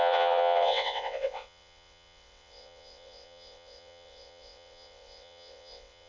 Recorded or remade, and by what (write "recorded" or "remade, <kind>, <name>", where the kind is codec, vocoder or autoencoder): remade, vocoder, WaveNeXt